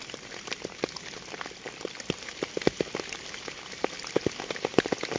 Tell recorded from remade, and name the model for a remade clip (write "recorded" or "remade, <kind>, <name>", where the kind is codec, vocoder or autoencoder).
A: recorded